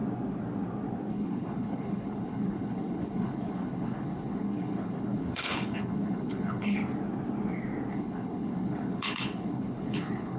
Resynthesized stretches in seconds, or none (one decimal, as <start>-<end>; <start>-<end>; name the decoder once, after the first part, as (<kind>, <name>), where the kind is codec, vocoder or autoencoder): 1.1-6.8 (codec, HILCodec); 7.9-10.4